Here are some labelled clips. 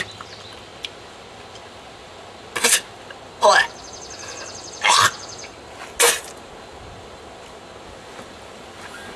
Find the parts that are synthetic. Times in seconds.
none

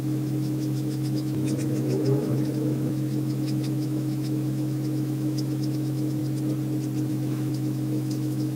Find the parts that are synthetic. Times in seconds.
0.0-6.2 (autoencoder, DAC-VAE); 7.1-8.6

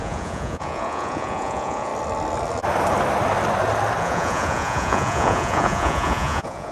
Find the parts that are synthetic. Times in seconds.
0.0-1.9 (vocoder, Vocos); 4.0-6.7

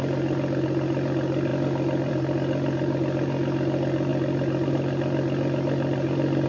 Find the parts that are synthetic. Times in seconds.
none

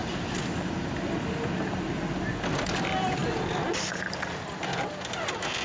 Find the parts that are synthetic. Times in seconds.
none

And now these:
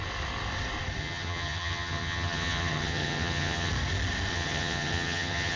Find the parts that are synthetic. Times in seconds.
1.0-3.7 (vocoder, HiFi-GAN); 4.3-5.6